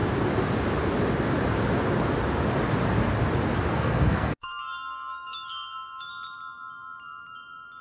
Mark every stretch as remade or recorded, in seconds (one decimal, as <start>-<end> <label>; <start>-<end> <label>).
0.0-3.7 recorded; 3.7-6.1 remade; 6.1-7.8 recorded

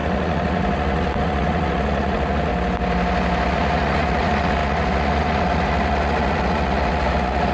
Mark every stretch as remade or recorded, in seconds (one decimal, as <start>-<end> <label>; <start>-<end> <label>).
0.0-2.5 remade; 2.5-3.5 recorded; 3.5-7.5 remade

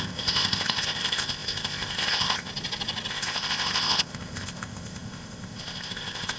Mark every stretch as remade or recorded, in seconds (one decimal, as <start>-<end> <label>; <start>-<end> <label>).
0.0-2.5 remade; 2.5-3.1 recorded; 3.1-6.4 remade